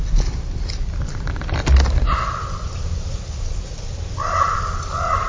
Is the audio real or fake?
real